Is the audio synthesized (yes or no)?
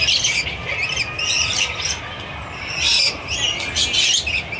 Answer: no